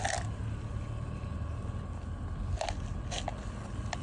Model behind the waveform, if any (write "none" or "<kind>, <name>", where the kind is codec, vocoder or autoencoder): none